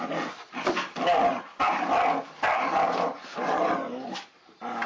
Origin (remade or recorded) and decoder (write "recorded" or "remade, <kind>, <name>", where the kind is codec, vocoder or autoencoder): recorded